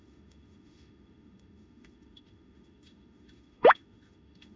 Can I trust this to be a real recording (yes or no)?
no